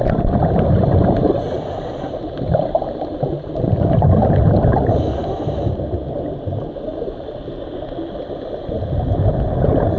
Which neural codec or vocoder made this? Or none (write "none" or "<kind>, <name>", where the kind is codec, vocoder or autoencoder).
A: none